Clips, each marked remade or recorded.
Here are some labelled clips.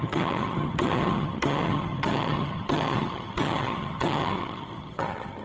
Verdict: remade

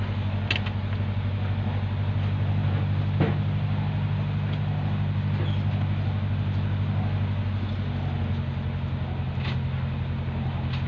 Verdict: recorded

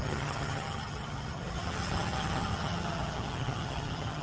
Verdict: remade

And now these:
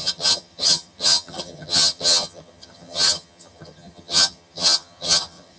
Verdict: remade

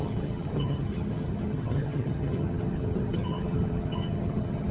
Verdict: remade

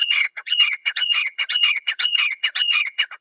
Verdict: remade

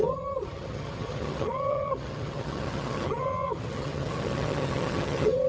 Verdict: remade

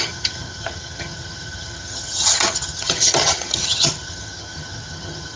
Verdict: remade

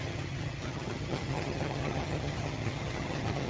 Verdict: remade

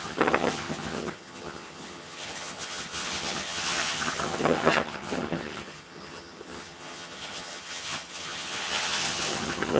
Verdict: remade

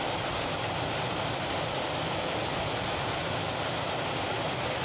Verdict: recorded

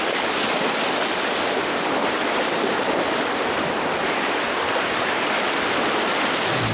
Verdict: recorded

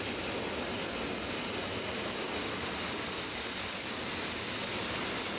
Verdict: recorded